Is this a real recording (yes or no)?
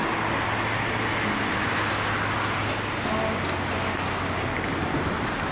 yes